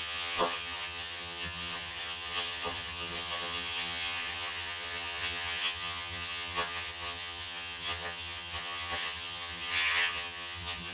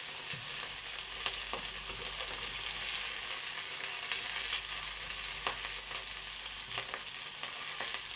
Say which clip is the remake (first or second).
first